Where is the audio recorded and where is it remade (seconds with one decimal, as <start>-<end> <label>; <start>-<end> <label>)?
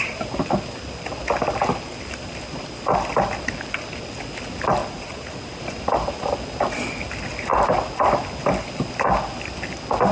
0.0-4.8 recorded; 4.8-5.6 remade; 5.6-10.1 recorded